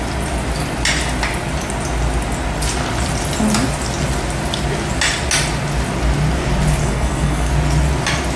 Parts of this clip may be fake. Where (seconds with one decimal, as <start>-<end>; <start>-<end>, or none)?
6.8-7.5